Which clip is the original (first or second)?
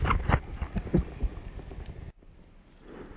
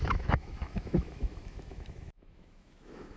first